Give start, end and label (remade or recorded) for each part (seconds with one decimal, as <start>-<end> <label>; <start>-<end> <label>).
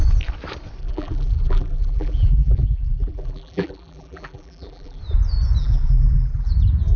0.0-0.8 recorded; 0.8-5.0 remade; 5.0-5.6 recorded; 5.6-6.5 remade; 6.5-7.0 recorded